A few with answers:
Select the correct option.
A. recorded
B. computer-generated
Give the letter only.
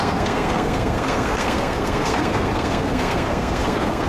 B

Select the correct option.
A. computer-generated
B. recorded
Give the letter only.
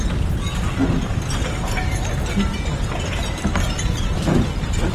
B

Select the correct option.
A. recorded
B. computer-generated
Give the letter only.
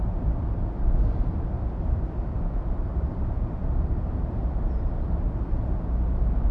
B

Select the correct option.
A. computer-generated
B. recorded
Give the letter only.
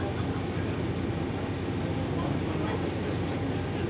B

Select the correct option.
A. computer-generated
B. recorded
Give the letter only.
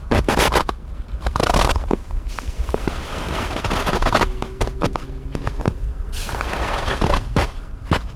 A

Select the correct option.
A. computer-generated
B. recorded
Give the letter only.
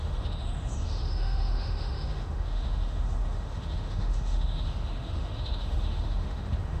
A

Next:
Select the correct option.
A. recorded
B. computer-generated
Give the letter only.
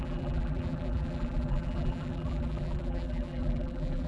B